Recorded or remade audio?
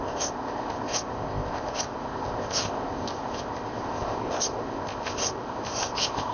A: remade